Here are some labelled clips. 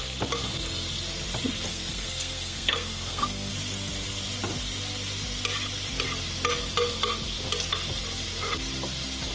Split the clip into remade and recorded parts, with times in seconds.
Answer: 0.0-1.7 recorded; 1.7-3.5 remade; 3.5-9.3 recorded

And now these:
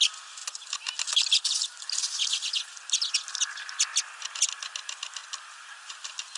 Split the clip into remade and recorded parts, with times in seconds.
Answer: 0.0-6.4 recorded

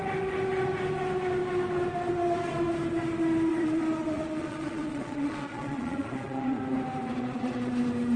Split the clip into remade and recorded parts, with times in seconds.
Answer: 0.0-3.5 recorded; 3.5-6.6 remade; 6.6-7.2 recorded; 7.2-7.7 remade; 7.7-8.2 recorded